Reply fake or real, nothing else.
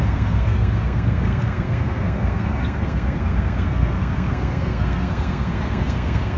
fake